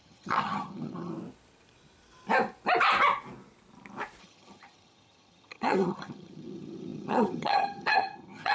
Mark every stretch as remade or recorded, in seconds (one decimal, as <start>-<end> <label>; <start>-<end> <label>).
0.0-1.1 remade; 1.1-4.2 recorded; 4.2-8.5 remade